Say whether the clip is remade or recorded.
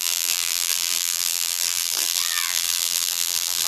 remade